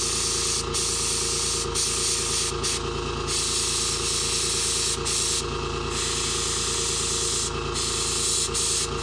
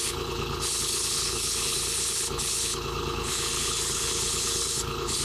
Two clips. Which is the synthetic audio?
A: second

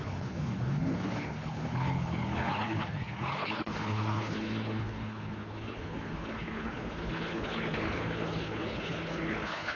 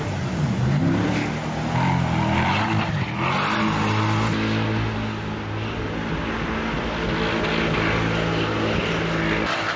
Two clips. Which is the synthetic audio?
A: first